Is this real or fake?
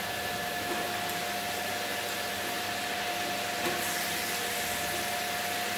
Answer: real